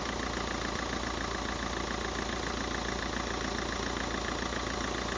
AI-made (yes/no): no